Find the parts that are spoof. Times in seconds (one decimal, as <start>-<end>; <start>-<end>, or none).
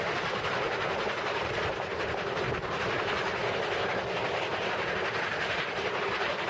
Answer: none